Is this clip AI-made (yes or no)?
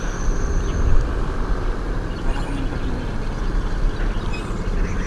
no